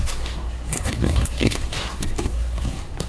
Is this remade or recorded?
remade